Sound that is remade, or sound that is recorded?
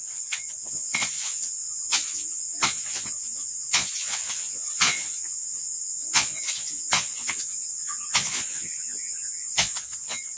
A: remade